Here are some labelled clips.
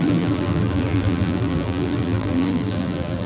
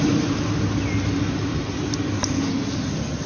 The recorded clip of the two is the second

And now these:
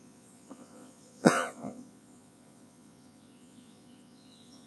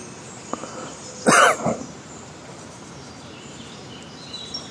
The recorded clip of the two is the second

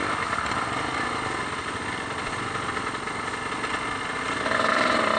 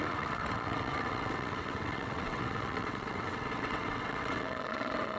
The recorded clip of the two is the first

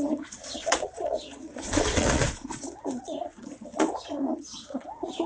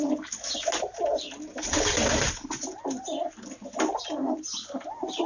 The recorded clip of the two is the second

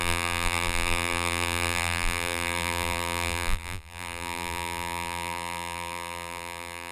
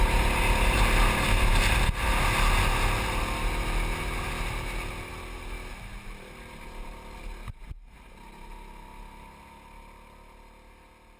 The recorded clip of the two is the second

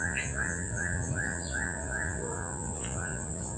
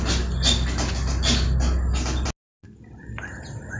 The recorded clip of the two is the second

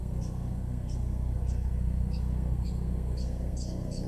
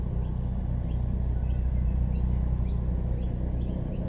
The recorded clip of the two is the second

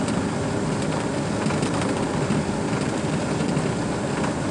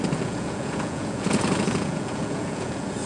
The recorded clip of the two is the first